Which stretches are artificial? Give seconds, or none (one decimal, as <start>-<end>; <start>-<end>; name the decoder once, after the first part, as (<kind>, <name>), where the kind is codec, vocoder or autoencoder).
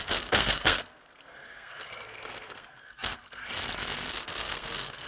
0.0-3.4 (codec, SNAC); 4.1-5.1